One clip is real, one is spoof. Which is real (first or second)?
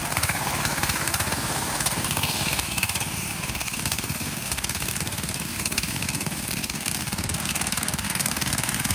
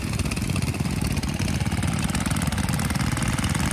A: second